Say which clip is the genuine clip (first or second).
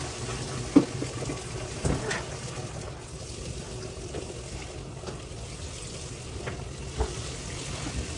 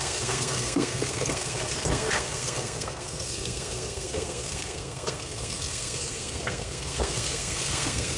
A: first